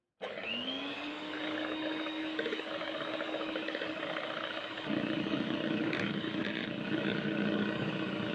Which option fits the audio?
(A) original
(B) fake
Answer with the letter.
B